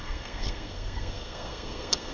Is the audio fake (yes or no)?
yes